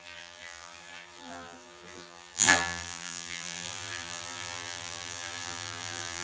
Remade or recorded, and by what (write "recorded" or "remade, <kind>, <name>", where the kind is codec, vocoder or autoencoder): remade, vocoder, BigVGAN v2